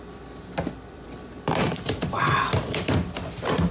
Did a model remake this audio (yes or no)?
yes